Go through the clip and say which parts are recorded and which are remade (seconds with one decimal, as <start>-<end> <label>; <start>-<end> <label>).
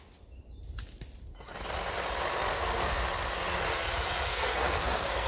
0.0-2.5 recorded; 2.5-3.0 remade; 3.0-4.3 recorded; 4.3-5.3 remade